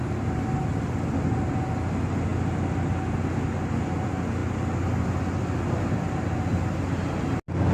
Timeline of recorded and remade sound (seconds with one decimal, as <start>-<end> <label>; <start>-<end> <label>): 0.0-7.7 recorded